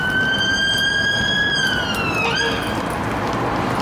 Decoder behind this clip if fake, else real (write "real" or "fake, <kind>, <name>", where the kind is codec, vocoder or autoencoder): real